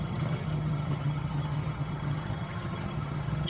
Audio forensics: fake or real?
fake